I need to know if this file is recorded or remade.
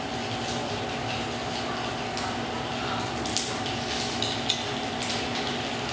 recorded